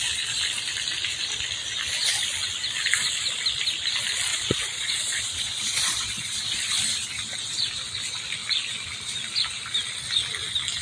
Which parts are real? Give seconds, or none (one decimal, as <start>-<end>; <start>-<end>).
0.0-4.3; 6.6-10.8